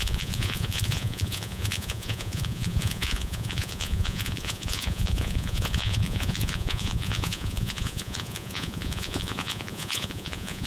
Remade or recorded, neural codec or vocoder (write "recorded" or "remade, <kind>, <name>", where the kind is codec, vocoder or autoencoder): remade, vocoder, Vocos